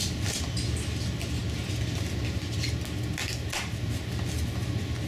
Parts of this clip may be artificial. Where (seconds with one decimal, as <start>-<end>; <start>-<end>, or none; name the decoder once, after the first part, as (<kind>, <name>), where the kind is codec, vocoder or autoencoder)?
none